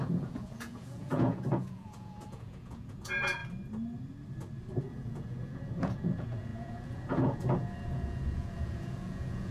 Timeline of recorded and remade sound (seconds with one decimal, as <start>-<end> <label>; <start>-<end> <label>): 0.0-3.4 remade; 3.4-4.8 recorded; 4.8-9.5 remade